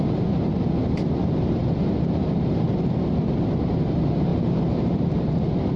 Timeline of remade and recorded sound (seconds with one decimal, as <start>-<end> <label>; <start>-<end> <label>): 0.0-4.3 recorded; 4.3-5.3 remade; 5.3-5.8 recorded